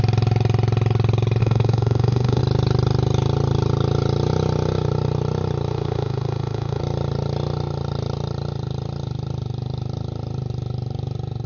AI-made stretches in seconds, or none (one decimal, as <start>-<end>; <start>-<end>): 1.4-2.4; 5.7-6.8